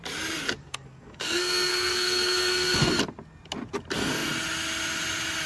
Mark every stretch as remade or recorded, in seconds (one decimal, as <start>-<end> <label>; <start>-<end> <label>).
0.0-0.6 recorded; 0.6-2.9 remade; 2.9-5.5 recorded